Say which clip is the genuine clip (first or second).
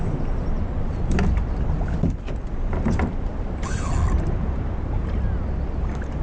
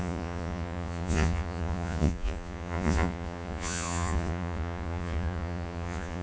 first